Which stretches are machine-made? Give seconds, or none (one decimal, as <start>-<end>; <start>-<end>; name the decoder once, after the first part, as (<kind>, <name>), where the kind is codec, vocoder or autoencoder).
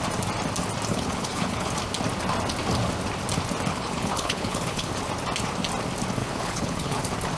0.9-1.7 (codec, HILCodec); 3.7-4.9; 6.2-7.0